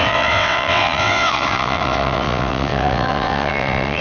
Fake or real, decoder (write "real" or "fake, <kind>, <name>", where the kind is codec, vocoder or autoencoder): fake, vocoder, WaveNeXt